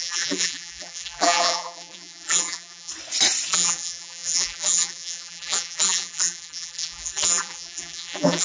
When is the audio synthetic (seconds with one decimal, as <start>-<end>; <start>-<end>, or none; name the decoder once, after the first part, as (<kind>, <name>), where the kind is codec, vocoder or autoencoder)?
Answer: 0.0-2.9 (vocoder, BigVGAN v2); 3.5-8.4